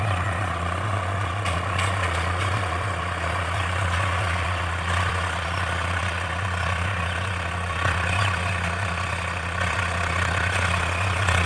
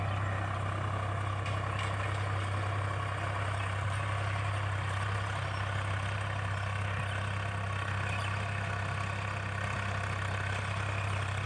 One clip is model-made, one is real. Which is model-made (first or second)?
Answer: first